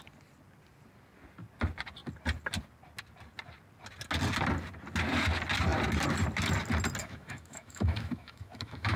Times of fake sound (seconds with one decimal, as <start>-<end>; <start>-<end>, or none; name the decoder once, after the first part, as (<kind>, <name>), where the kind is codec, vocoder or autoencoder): 7.0-9.0 (autoencoder, DAC-VAE)